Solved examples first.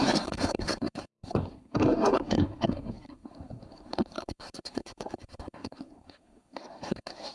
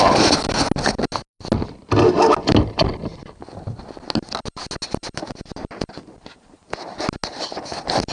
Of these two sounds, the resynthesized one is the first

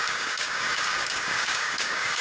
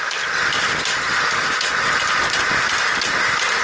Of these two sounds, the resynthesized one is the first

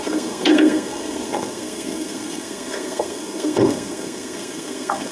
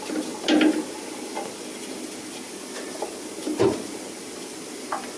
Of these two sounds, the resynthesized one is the first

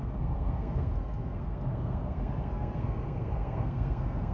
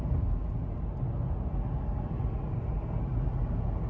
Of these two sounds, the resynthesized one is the first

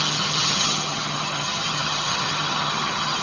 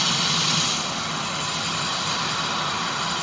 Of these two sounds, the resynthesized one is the first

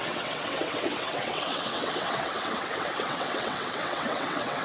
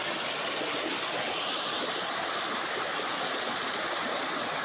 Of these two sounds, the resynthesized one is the first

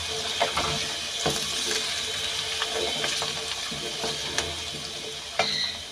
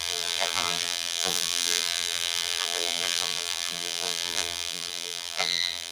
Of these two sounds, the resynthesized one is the second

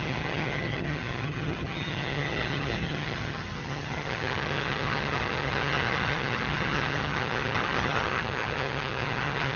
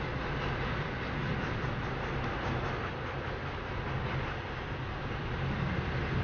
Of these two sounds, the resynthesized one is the first